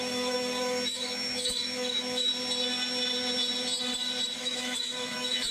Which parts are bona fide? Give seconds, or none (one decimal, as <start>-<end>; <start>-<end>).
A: 2.3-4.4